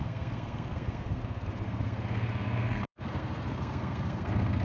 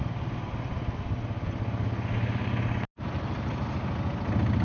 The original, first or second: second